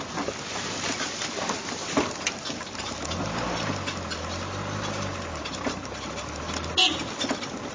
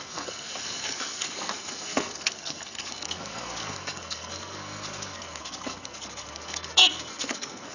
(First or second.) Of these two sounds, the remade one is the second